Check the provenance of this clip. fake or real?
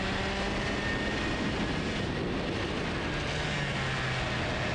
real